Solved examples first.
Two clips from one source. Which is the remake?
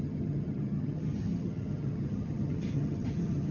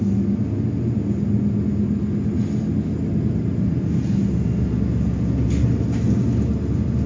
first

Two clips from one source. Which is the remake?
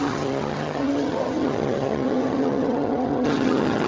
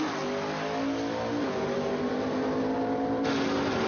first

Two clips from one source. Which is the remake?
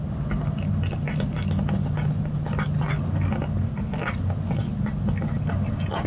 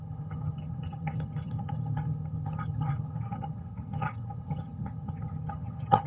second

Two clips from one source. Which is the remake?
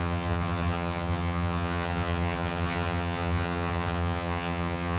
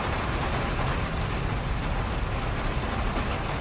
first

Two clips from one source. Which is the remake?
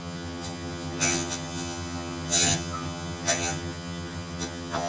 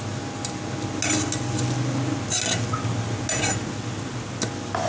first